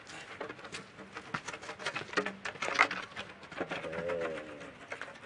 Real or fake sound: real